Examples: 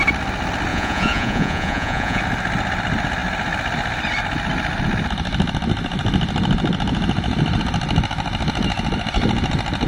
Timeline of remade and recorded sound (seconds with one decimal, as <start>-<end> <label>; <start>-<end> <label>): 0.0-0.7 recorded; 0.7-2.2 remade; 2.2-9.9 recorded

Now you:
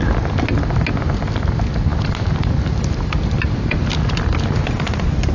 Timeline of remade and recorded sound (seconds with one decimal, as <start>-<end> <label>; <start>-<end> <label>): 0.0-5.3 recorded

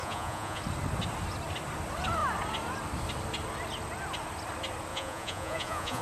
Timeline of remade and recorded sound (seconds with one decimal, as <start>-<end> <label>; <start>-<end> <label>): 0.0-0.6 remade; 0.6-4.9 recorded; 4.9-6.0 remade

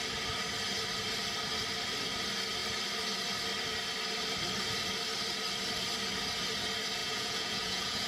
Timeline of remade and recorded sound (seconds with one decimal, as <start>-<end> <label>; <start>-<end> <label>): 0.0-7.0 recorded; 7.0-8.1 remade

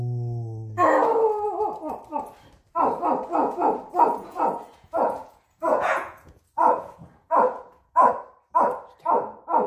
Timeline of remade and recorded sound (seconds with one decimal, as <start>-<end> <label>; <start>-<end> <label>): 0.0-3.4 recorded; 3.4-8.1 remade; 8.1-9.7 recorded